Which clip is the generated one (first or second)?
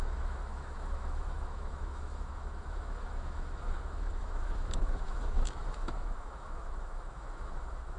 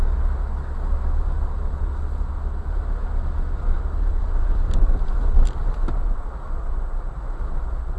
first